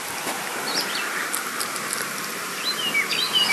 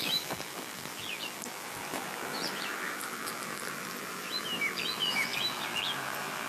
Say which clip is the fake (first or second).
second